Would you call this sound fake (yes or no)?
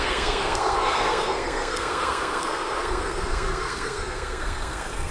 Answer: yes